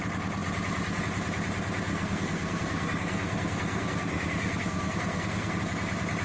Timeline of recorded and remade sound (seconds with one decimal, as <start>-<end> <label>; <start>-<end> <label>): 0.0-1.9 recorded; 1.9-5.6 remade; 5.6-6.2 recorded